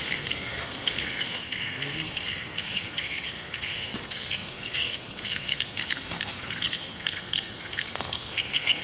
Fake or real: fake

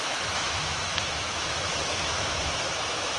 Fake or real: fake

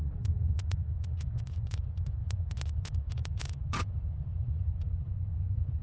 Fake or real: fake